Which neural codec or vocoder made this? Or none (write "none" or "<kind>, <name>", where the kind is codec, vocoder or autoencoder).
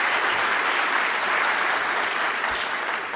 none